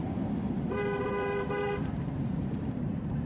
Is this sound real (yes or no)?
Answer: no